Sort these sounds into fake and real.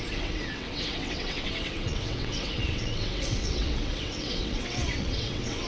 fake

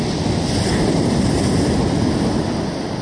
real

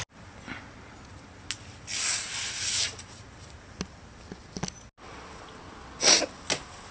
real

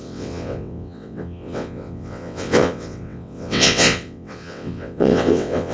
fake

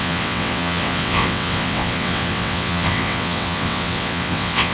fake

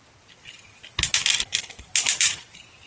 real